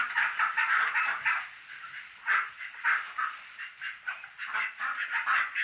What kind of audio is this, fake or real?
real